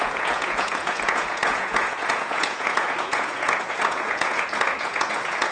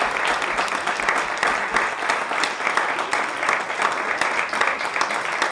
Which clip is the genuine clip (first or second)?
second